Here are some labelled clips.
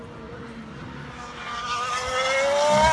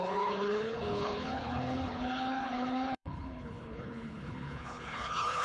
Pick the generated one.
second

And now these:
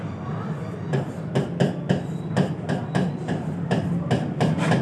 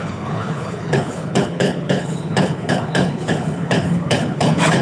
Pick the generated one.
second